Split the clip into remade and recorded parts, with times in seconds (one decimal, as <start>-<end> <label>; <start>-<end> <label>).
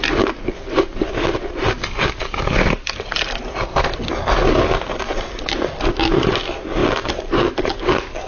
0.0-8.3 recorded